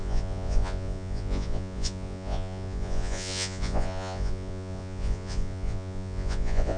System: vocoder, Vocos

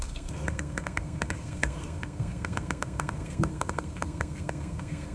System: codec, SNAC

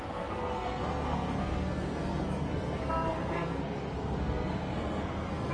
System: codec, SNAC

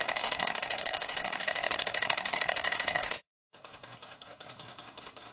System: codec, SNAC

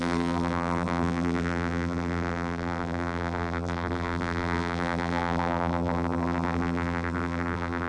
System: vocoder, BigVGAN v2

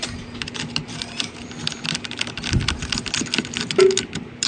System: none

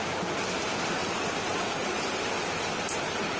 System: none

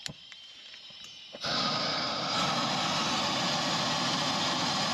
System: none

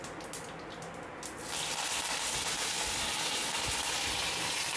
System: none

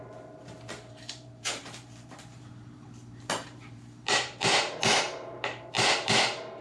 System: vocoder, BigVGAN v2